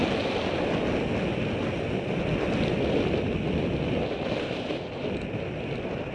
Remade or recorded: recorded